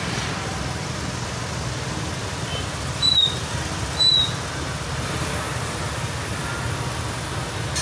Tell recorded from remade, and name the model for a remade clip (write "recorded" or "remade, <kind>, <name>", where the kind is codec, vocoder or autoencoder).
recorded